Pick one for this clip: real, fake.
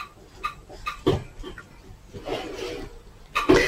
real